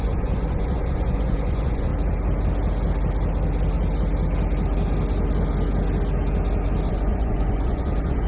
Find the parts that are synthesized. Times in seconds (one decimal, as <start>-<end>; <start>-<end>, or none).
0.0-1.9; 6.9-8.3

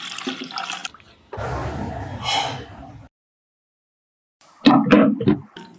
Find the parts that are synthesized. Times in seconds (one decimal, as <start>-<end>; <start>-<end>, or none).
none